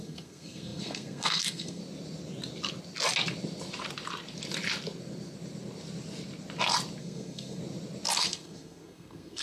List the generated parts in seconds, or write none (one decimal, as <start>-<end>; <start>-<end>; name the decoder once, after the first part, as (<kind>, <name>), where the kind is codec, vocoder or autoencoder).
0.0-1.8 (codec, SNAC); 7.0-7.6; 8.2-9.4